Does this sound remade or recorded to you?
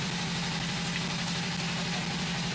remade